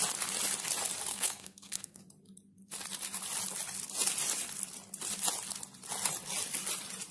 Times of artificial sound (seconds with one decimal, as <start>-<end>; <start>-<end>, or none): 1.1-2.0